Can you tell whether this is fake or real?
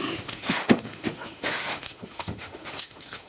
fake